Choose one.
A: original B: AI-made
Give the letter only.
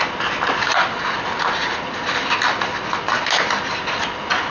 A